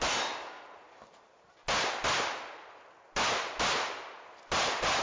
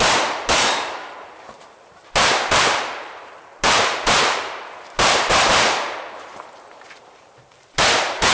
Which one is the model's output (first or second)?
second